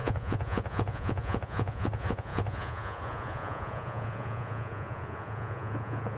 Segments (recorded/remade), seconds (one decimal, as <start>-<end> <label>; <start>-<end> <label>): 0.0-6.2 remade